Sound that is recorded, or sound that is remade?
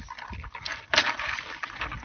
recorded